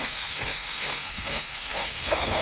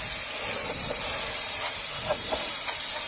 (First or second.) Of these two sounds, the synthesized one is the first